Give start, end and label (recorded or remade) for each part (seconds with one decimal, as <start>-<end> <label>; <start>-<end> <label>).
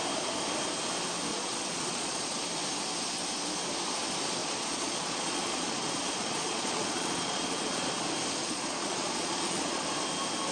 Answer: 0.0-1.3 recorded; 1.3-2.4 remade; 2.4-4.4 recorded; 4.4-7.9 remade; 7.9-8.4 recorded; 8.4-9.8 remade; 9.8-10.5 recorded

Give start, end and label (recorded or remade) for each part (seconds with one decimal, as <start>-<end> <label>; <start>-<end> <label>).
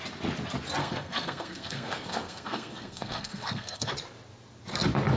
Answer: 0.0-0.8 recorded; 0.8-3.9 remade; 3.9-5.2 recorded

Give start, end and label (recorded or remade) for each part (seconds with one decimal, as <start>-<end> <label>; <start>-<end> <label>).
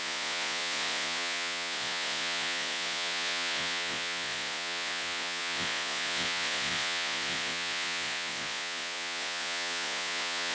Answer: 0.0-10.5 remade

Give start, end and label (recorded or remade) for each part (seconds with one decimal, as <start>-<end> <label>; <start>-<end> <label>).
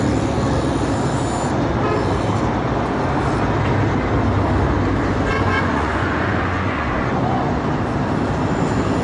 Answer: 0.0-5.3 recorded; 5.3-7.4 remade; 7.4-9.0 recorded